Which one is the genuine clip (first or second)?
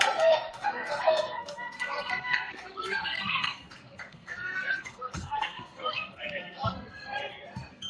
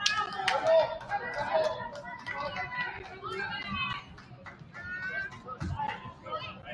second